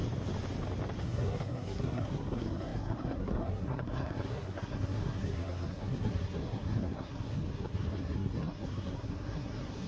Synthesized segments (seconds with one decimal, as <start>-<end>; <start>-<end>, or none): 1.0-9.9